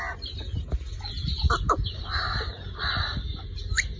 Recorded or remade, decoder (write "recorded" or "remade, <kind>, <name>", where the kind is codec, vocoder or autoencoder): recorded